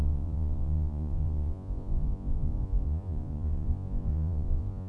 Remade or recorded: remade